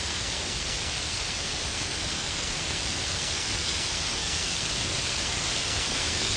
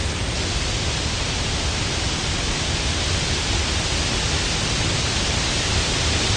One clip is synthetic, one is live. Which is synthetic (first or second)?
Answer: first